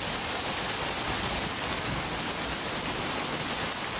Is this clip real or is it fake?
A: real